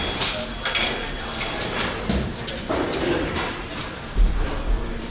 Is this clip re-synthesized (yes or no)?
no